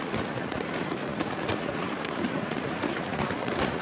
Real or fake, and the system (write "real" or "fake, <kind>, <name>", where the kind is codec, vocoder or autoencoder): fake, vocoder, Vocos